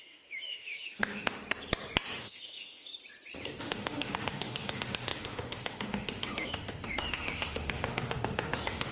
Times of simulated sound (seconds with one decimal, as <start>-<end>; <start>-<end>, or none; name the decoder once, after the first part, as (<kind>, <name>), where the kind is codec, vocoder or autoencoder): 0.0-1.4 (autoencoder, DAC-VAE); 2.2-2.9; 3.6-8.9